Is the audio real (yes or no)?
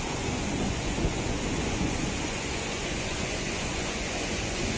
no